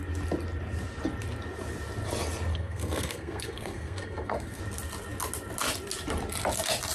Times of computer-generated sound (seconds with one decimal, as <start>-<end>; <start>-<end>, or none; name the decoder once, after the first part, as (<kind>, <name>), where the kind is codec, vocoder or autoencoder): 2.5-4.6 (codec, SNAC)